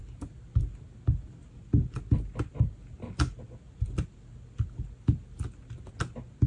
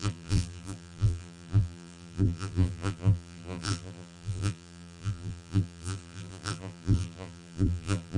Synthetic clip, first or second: second